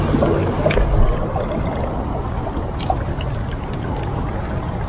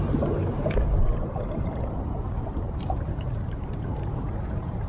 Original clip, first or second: first